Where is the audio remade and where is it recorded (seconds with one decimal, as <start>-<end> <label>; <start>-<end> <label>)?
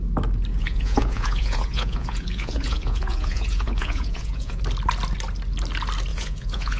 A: 0.0-0.5 recorded; 0.5-4.6 remade; 4.6-6.1 recorded; 6.1-6.8 remade